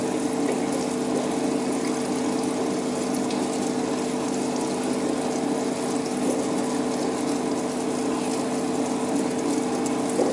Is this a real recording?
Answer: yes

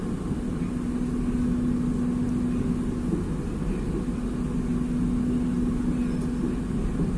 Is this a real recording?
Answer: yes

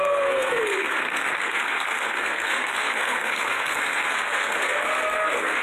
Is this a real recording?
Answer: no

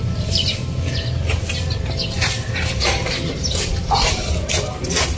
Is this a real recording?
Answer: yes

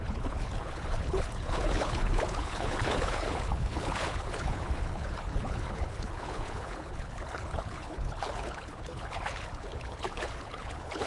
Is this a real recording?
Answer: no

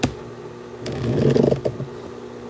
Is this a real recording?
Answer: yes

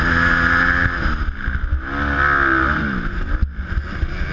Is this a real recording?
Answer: yes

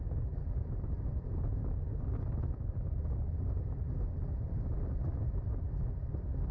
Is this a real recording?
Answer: yes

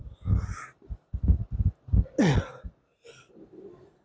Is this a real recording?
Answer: yes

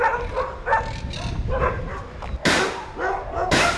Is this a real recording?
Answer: yes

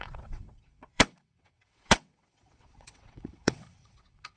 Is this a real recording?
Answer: no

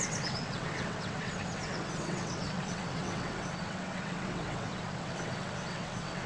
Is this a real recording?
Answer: no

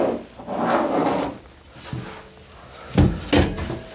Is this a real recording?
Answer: yes